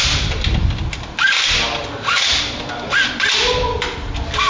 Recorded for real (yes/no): yes